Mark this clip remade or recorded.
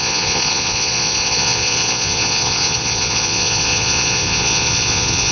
remade